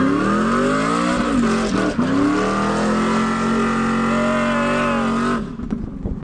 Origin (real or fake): real